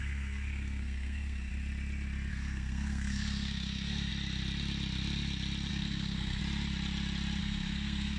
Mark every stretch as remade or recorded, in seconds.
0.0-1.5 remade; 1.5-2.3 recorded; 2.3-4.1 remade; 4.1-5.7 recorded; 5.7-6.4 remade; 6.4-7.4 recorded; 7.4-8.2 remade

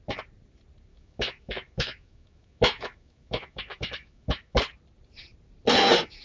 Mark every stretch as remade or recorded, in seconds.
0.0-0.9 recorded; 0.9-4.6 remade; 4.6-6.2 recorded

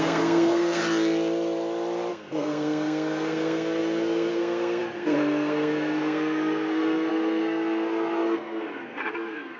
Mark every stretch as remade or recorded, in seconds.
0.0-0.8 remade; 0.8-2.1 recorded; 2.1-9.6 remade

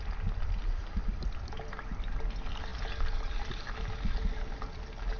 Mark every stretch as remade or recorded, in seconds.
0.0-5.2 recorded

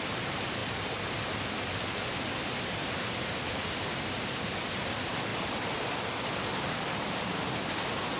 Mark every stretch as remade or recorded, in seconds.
0.0-8.2 recorded